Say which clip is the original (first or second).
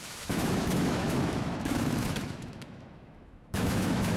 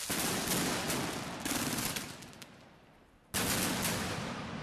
second